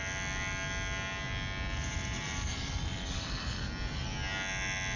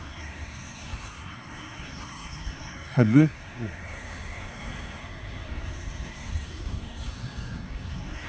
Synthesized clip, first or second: second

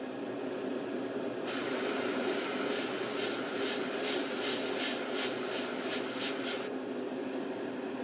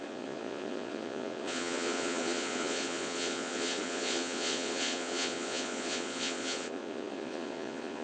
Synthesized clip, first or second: second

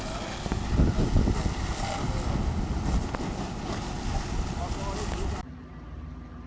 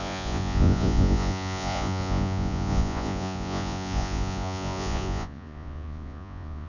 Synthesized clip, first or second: second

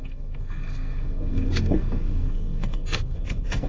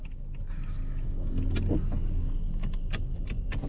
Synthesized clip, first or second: first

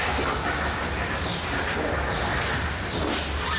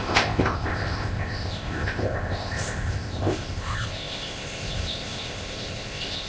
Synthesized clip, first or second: second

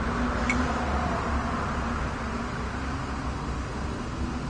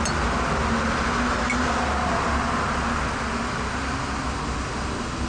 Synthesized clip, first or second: first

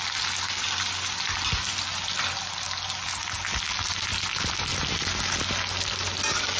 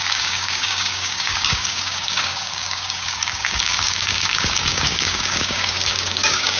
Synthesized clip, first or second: second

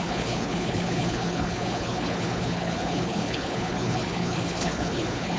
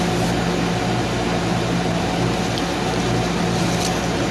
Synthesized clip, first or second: first